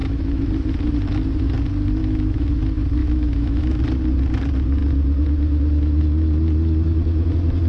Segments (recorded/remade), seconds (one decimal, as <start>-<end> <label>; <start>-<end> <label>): 0.0-0.5 remade; 0.5-2.0 recorded; 2.0-2.5 remade; 2.5-3.0 recorded; 3.0-3.8 remade; 3.8-7.7 recorded